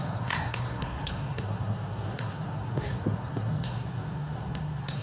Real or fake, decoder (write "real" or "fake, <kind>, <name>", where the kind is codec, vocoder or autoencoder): fake, codec, SNAC